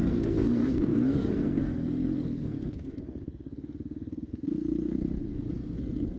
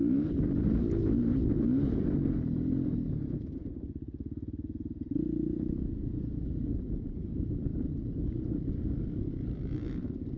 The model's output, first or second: first